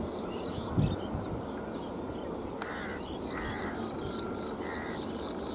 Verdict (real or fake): real